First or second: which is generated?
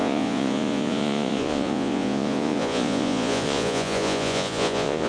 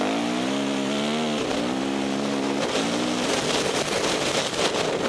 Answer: first